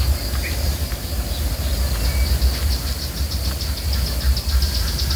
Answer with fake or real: real